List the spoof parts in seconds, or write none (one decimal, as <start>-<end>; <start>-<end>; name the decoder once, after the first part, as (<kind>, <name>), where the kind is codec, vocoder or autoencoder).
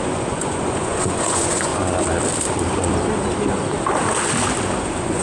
0.0-1.7 (vocoder, Vocos); 4.8-5.2